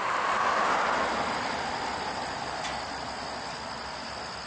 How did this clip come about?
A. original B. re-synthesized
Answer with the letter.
A